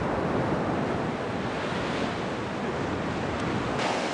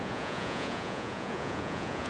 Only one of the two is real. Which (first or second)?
first